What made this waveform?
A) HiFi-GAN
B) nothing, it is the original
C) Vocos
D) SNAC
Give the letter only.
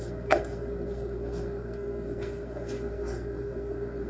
D